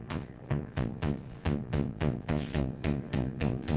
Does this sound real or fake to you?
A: fake